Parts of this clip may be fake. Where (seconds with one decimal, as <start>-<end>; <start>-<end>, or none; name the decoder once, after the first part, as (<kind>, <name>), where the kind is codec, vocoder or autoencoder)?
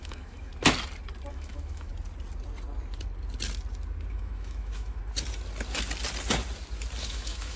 0.0-0.5 (autoencoder, DAC-VAE); 1.3-1.9; 4.1-5.0; 7.0-7.6